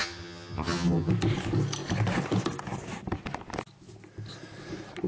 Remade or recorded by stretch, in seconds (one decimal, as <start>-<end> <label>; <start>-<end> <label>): 0.0-1.1 remade; 1.1-5.1 recorded